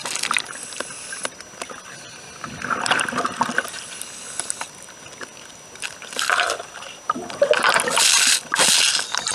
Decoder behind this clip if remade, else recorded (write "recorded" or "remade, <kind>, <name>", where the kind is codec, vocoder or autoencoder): recorded